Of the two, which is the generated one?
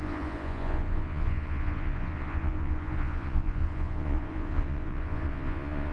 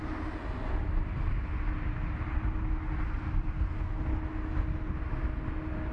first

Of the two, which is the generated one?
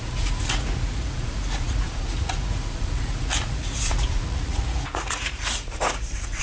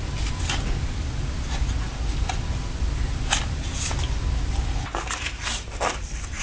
first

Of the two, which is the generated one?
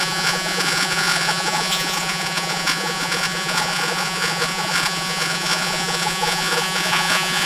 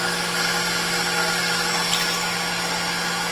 first